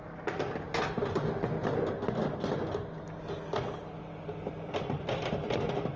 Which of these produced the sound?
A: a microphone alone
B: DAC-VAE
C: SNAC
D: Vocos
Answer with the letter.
A